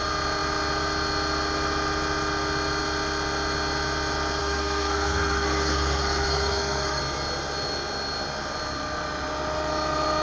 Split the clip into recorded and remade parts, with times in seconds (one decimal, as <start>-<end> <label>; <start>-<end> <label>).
0.0-4.4 recorded; 4.4-7.0 remade; 7.0-10.2 recorded